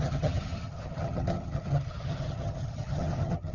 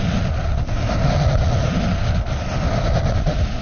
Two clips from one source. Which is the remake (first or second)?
first